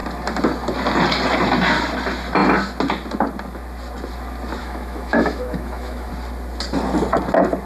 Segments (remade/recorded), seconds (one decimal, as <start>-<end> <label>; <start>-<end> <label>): 0.0-4.6 recorded; 4.6-6.1 remade; 6.1-7.7 recorded